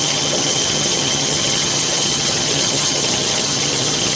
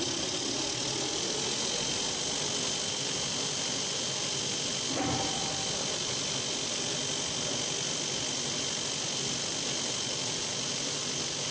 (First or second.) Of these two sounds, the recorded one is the second